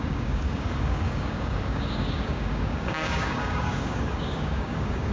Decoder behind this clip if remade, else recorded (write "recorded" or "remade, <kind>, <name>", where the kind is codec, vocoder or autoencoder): remade, codec, DAC